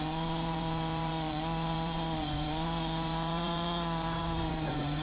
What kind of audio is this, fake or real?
fake